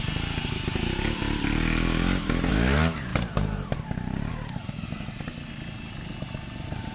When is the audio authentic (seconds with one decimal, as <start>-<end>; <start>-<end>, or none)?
0.0-3.1; 4.3-6.9